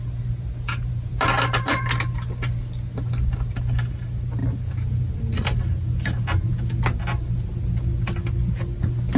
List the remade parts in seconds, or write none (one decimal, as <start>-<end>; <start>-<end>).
none